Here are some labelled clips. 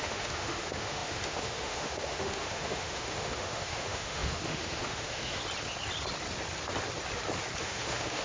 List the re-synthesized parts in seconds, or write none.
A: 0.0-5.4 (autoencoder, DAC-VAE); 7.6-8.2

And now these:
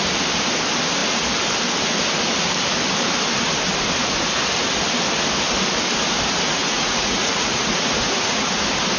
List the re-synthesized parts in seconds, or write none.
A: 6.5-8.5 (vocoder, Vocos)

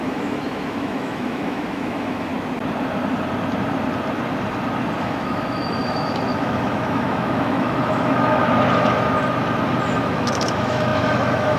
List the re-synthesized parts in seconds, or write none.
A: 0.0-2.3 (autoencoder, DAC-VAE); 5.0-8.4; 10.0-11.6